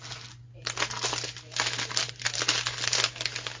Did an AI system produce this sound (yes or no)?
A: no